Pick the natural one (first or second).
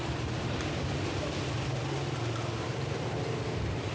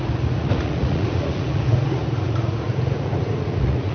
first